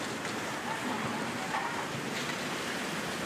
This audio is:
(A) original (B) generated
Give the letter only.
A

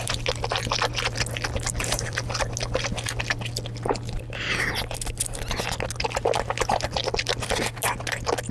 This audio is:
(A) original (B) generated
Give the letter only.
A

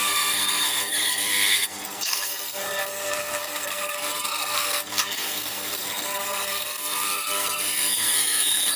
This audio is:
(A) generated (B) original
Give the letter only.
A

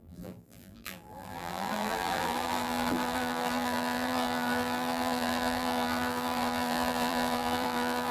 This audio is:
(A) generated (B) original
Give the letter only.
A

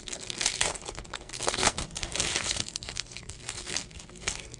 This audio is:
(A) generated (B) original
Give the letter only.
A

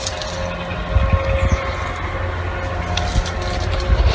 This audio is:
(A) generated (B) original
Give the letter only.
B